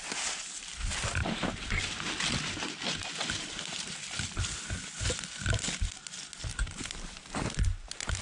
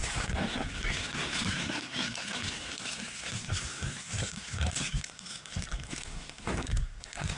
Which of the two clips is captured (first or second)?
first